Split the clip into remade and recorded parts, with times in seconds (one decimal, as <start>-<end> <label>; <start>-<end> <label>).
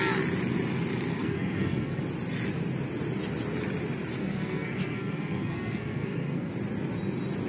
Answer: 0.0-1.2 recorded; 1.2-2.0 remade; 2.0-4.2 recorded; 4.2-6.5 remade; 6.5-7.5 recorded